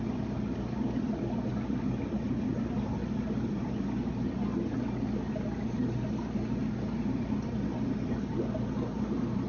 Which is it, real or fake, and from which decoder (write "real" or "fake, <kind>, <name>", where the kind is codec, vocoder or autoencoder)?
real